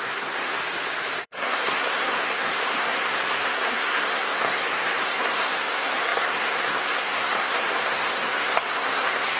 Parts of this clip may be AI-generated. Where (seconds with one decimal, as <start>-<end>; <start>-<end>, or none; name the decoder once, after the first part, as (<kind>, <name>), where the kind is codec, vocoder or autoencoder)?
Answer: 0.0-0.6 (codec, SNAC); 1.2-9.4